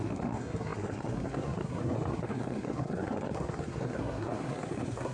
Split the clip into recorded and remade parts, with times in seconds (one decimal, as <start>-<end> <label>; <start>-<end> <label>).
0.0-5.1 remade